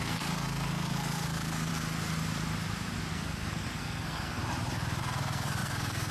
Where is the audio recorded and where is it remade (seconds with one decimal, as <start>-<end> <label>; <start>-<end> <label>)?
0.0-1.7 remade; 1.7-3.1 recorded; 3.1-4.4 remade; 4.4-5.0 recorded; 5.0-6.1 remade